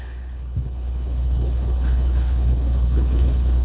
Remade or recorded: remade